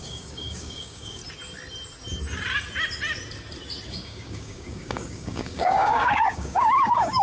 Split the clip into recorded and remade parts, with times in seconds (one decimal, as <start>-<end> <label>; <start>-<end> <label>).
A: 0.0-1.2 remade; 1.2-3.9 recorded; 3.9-7.2 remade